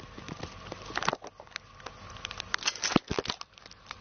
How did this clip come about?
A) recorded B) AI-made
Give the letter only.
A